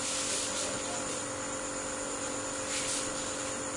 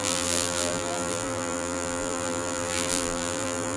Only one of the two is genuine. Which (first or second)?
first